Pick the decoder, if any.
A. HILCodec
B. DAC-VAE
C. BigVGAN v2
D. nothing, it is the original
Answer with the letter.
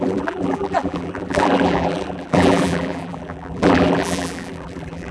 C